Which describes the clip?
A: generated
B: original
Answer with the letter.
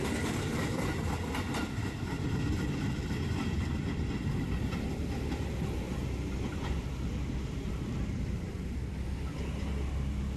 B